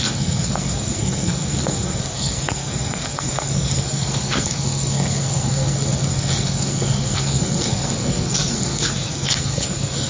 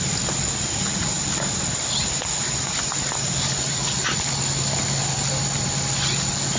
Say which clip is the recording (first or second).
second